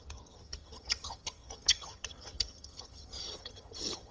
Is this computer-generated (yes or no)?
yes